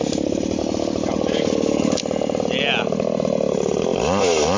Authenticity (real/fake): real